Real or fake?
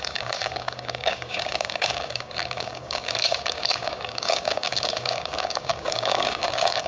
fake